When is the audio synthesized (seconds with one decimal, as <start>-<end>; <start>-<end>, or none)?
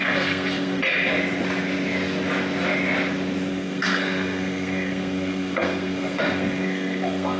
0.0-0.8; 3.5-7.4